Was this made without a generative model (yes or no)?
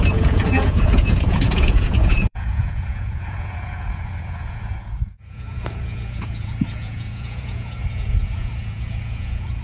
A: no